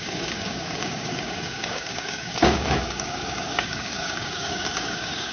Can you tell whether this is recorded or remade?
remade